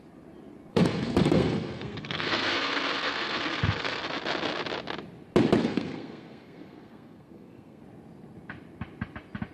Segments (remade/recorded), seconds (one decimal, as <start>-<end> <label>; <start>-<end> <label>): 0.0-0.7 recorded; 0.7-4.0 remade; 4.0-5.6 recorded; 5.6-7.8 remade; 7.8-9.5 recorded